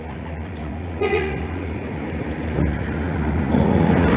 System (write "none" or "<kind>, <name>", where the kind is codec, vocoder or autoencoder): vocoder, Vocos